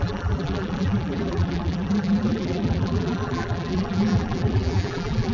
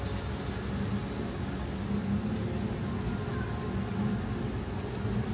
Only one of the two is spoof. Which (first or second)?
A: first